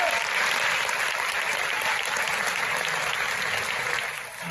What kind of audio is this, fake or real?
real